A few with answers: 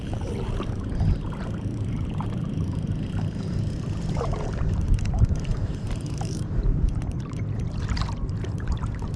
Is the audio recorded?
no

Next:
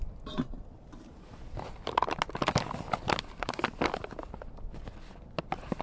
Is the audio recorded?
yes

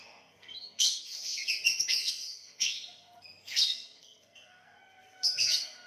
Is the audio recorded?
no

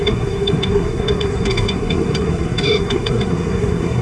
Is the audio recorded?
no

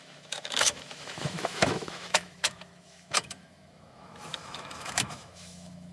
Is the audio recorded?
no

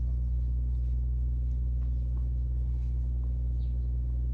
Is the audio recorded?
yes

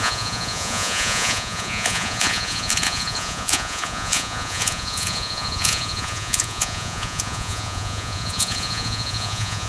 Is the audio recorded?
no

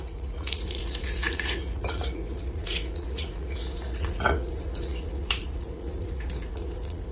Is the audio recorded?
no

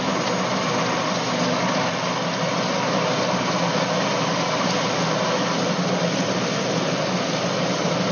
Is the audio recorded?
yes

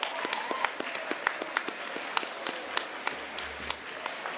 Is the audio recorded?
yes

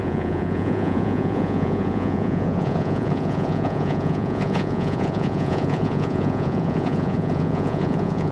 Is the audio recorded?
no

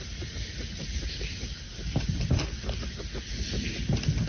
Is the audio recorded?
yes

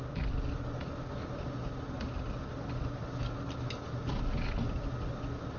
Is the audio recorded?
yes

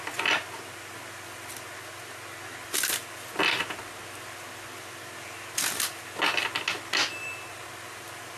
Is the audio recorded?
yes